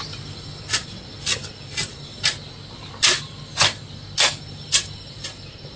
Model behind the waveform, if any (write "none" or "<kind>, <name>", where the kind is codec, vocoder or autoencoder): none